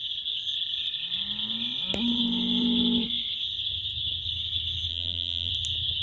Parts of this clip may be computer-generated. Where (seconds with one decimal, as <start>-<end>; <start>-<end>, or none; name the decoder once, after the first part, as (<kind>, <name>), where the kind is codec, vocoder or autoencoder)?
4.9-5.5 (vocoder, BigVGAN v2)